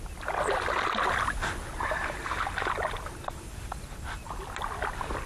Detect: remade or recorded recorded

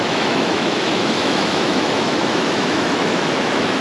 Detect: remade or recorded remade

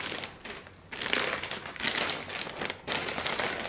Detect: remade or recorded recorded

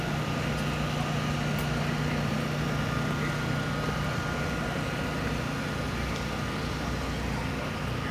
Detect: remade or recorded recorded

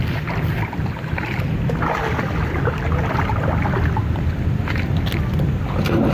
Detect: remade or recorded recorded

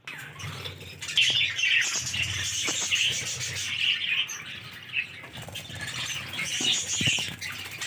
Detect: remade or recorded recorded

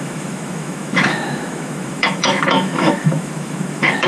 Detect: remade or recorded remade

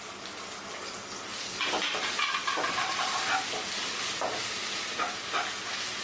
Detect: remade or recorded recorded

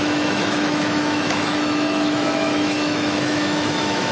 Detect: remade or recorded remade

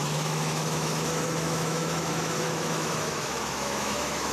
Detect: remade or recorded remade